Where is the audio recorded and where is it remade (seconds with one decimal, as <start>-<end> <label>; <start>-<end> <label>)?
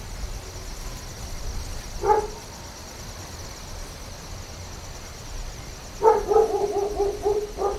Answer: 0.0-7.8 recorded